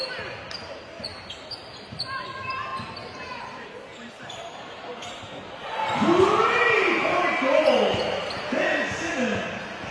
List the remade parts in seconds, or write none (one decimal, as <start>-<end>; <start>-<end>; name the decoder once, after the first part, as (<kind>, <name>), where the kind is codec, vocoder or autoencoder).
3.9-8.4 (vocoder, BigVGAN v2)